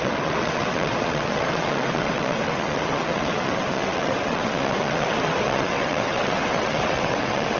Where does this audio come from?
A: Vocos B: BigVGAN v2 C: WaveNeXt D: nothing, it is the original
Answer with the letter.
C